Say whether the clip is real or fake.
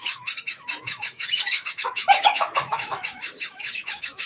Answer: fake